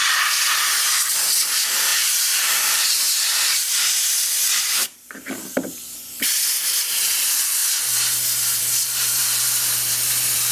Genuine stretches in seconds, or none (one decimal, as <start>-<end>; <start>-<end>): 0.0-1.9; 6.6-10.5